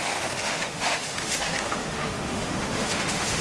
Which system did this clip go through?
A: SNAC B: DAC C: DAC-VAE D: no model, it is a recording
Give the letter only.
C